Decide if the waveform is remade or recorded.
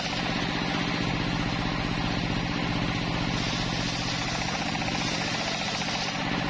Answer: recorded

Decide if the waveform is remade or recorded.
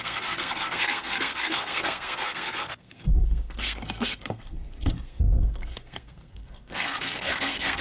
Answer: remade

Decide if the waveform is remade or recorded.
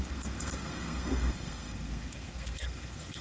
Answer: remade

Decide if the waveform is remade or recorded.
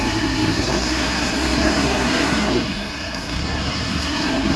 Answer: remade